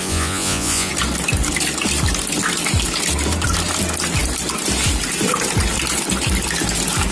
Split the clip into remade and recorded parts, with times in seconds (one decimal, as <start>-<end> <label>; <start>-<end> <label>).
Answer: 0.0-0.9 remade; 0.9-7.1 recorded